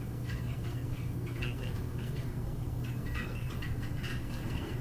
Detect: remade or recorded remade